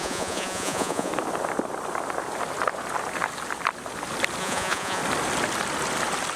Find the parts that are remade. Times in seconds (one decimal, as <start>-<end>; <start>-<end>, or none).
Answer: 0.0-1.1; 4.4-5.0